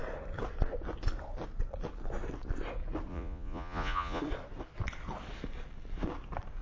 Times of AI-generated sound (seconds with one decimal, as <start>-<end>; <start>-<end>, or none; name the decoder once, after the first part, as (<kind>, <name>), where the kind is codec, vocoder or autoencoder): 3.1-4.2 (vocoder, Vocos)